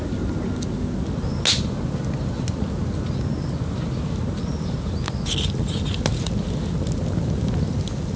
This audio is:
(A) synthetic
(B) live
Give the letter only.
B